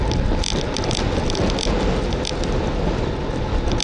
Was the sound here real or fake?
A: real